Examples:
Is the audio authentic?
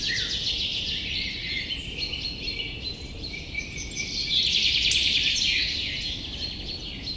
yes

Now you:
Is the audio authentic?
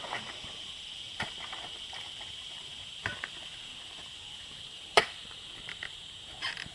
no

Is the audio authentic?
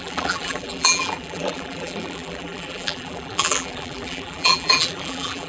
no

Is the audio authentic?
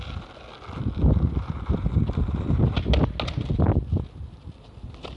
yes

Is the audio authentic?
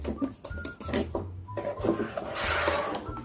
yes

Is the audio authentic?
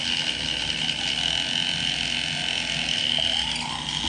yes